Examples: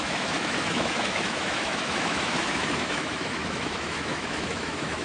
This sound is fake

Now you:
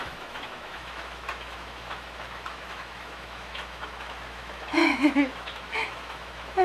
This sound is fake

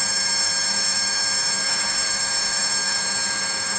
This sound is fake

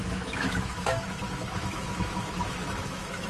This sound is fake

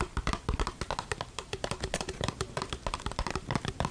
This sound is real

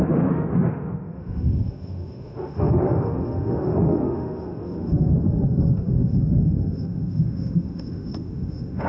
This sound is fake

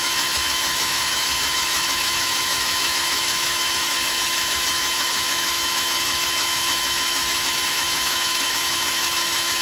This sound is fake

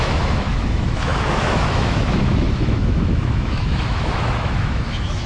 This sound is fake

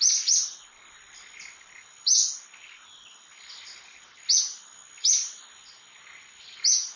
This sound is real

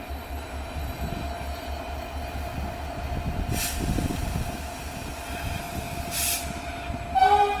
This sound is real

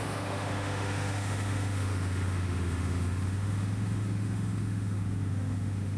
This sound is fake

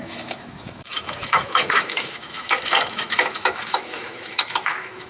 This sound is fake